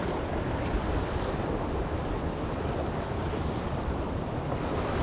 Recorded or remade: recorded